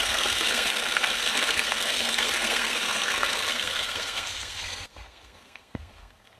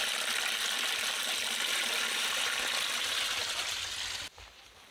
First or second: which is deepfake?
first